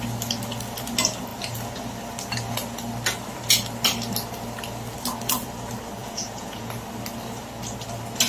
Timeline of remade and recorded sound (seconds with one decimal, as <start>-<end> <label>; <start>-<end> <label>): 0.0-6.0 recorded; 6.0-6.7 remade; 6.7-8.3 recorded